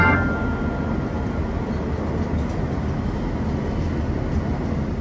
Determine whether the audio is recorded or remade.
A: recorded